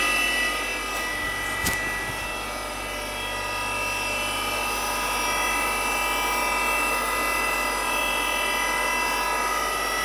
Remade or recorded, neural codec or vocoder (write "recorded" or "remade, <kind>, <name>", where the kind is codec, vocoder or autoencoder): recorded